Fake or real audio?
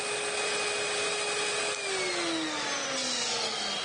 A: real